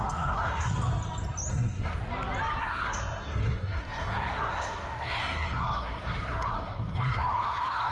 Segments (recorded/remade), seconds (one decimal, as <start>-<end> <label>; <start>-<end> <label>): 0.0-0.7 remade; 0.7-1.5 recorded; 1.5-2.0 remade; 2.0-2.6 recorded; 2.6-7.9 remade